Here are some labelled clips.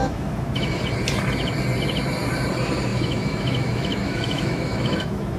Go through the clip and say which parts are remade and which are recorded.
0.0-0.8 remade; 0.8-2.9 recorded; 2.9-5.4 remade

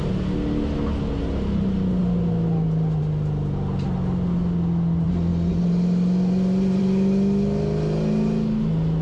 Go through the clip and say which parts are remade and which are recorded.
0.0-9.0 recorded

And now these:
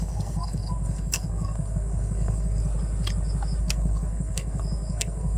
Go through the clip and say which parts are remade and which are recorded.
0.0-2.6 remade; 2.6-3.6 recorded; 3.6-5.4 remade